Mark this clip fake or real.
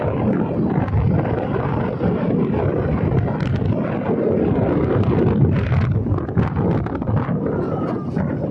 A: real